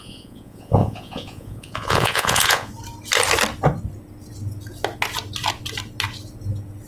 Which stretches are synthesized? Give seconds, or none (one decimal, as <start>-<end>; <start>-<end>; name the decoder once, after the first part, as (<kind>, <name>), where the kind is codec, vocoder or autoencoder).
0.0-2.7 (vocoder, Vocos)